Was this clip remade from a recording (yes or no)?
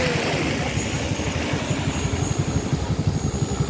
no